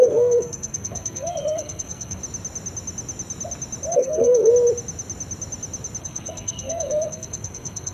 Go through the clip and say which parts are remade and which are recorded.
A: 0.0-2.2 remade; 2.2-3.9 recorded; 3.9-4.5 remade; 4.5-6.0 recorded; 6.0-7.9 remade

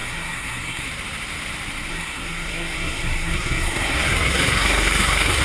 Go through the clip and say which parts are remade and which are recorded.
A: 0.0-0.9 remade; 0.9-1.9 recorded; 1.9-5.4 remade

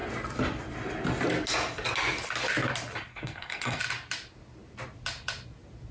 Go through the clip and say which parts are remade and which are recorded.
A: 0.0-3.1 recorded; 3.1-3.8 remade; 3.8-5.9 recorded